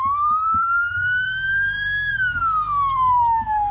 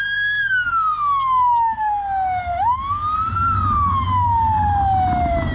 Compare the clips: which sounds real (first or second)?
second